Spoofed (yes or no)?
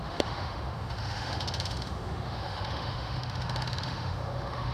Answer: yes